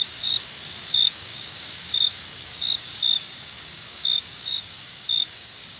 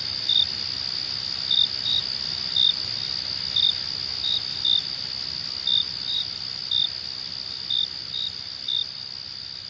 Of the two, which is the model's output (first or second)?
first